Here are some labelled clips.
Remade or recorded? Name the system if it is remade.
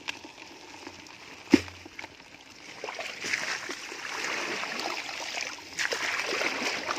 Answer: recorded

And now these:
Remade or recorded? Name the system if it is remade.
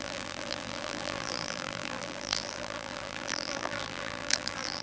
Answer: remade, vocoder, BigVGAN v2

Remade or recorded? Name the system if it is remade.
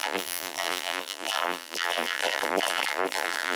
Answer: remade, vocoder, BigVGAN v2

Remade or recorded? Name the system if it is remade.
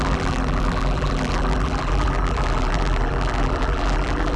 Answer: remade, vocoder, BigVGAN v2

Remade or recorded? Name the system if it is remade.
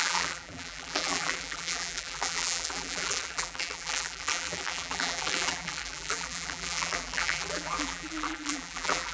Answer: remade, vocoder, BigVGAN v2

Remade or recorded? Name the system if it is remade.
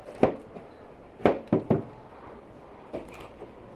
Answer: recorded